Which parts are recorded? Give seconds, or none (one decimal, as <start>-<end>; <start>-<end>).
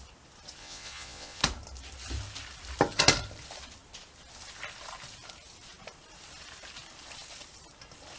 0.0-0.6; 1.4-8.2